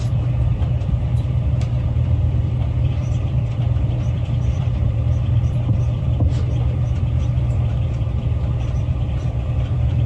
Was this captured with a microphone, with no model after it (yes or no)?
no